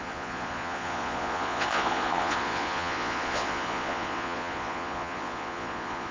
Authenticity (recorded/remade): remade